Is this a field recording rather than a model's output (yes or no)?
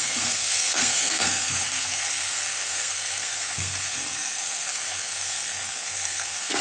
no